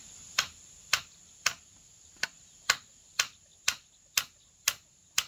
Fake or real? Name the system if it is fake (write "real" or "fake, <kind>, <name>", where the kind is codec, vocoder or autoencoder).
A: real